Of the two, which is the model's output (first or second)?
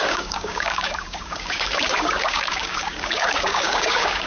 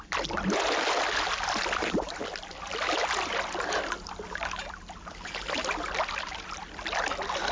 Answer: first